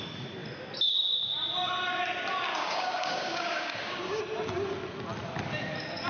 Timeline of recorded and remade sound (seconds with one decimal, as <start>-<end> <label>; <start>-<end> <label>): 0.0-2.5 recorded; 2.5-4.2 remade; 4.2-6.1 recorded

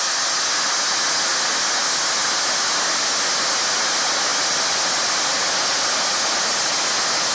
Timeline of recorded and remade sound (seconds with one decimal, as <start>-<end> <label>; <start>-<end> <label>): 0.0-7.3 recorded